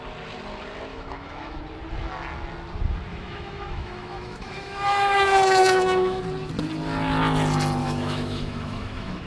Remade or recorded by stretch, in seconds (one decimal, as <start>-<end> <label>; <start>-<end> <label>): 0.0-0.9 recorded; 0.9-1.6 remade; 1.6-3.1 recorded; 3.1-6.2 remade; 6.2-7.8 recorded; 7.8-9.3 remade